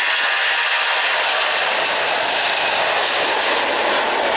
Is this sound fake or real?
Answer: real